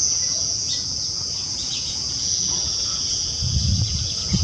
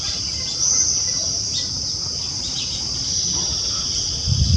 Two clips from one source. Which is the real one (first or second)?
second